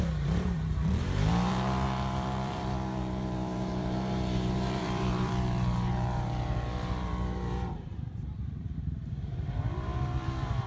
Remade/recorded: remade